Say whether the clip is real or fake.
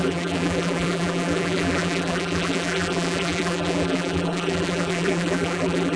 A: fake